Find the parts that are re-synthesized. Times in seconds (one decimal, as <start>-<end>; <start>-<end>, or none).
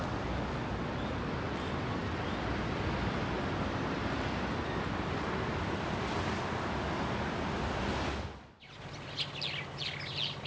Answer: none